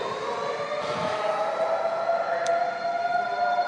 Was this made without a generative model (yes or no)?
yes